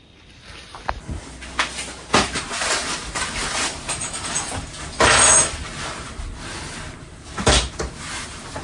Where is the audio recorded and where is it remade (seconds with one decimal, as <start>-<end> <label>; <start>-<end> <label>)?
0.0-8.6 recorded